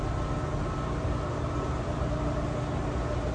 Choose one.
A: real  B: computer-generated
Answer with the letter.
A